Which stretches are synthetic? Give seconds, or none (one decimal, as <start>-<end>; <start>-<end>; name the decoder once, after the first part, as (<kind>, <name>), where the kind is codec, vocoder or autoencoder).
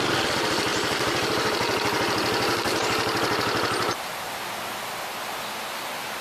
0.7-4.4 (vocoder, BigVGAN v2)